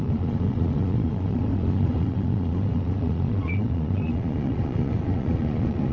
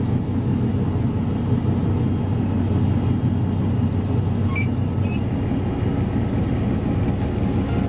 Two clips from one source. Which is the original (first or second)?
second